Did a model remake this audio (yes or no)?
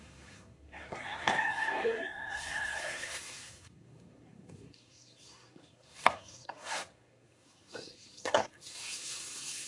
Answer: yes